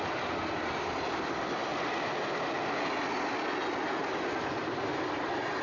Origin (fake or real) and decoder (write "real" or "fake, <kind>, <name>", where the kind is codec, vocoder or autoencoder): real